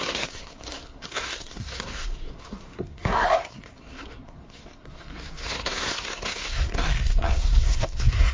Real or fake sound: fake